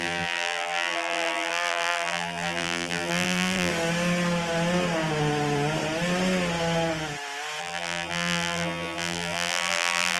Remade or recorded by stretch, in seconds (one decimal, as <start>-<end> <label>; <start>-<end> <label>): 0.0-3.7 remade; 3.7-7.6 recorded; 7.6-10.2 remade